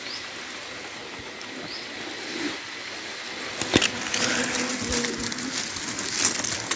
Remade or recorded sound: recorded